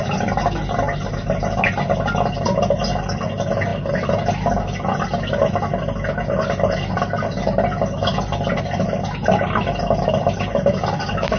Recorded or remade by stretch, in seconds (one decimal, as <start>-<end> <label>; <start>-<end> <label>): 0.0-11.4 recorded